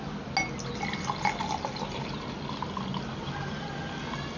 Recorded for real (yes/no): yes